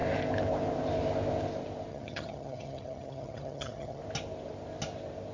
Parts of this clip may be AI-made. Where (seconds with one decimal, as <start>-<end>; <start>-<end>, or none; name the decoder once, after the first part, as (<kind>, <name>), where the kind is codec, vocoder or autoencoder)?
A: 1.9-4.0 (vocoder, HiFi-GAN)